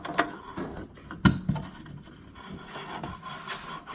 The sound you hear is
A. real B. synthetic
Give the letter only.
A